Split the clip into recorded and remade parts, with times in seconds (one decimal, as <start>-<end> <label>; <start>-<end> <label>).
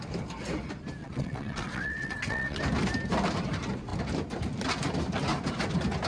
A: 0.0-1.0 recorded; 1.0-2.6 remade; 2.6-6.1 recorded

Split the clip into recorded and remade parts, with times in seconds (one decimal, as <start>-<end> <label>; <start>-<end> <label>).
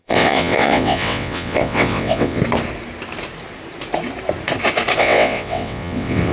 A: 0.0-2.4 remade; 2.4-5.0 recorded; 5.0-6.3 remade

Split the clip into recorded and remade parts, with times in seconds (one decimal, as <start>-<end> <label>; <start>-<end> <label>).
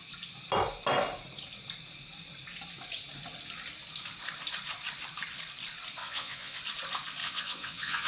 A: 0.0-6.0 recorded; 6.0-6.6 remade; 6.6-7.2 recorded; 7.2-8.1 remade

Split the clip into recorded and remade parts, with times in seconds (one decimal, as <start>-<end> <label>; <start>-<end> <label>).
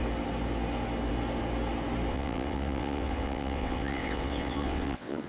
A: 0.0-2.1 recorded; 2.1-5.3 remade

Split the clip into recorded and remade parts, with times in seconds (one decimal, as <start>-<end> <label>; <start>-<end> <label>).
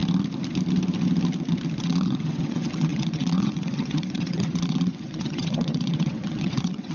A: 0.0-1.8 recorded; 1.8-6.9 remade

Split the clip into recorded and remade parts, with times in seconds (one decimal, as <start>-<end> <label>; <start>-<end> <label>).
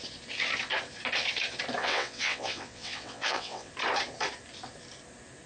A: 0.0-1.8 recorded; 1.8-3.7 remade; 3.7-5.5 recorded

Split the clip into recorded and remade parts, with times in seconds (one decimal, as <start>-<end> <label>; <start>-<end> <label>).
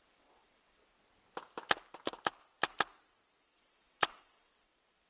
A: 0.0-0.8 remade; 0.8-3.4 recorded; 3.4-5.1 remade